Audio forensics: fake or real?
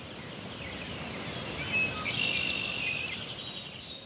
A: real